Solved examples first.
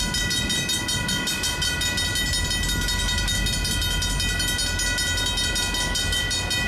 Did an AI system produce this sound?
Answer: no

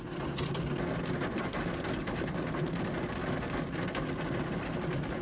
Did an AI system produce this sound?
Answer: no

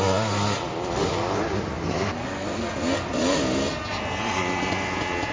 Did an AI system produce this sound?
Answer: no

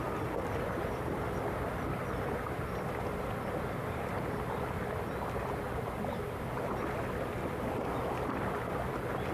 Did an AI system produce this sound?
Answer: no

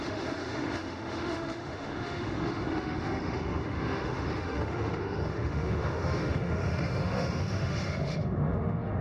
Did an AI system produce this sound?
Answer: yes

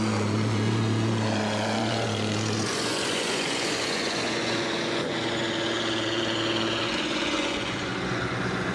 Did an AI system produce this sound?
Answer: yes